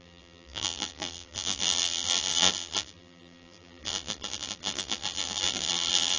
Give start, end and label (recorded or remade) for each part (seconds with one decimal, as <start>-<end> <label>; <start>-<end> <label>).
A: 0.0-6.2 remade